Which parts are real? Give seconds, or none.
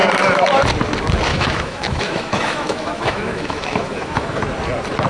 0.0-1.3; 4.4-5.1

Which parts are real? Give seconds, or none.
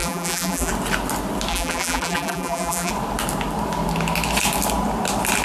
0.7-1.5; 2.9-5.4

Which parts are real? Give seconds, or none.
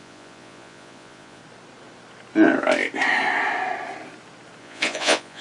1.4-4.6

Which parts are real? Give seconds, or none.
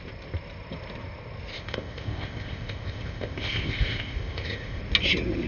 0.0-1.5; 4.8-5.5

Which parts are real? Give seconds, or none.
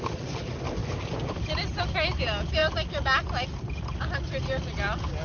0.0-5.2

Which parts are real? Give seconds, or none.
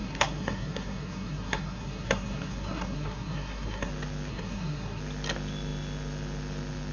3.9-4.3; 5.0-6.9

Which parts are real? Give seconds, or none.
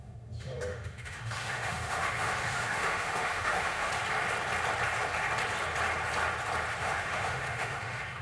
3.9-6.8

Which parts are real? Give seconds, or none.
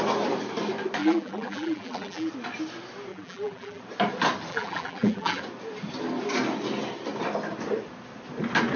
0.0-1.0; 2.3-3.1; 3.8-4.5; 5.4-8.8